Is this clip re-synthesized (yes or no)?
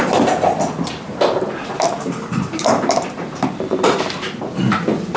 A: yes